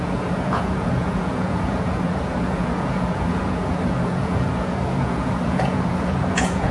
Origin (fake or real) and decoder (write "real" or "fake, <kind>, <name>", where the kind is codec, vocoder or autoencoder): fake, vocoder, Vocos